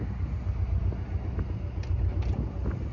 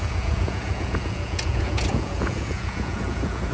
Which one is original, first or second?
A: first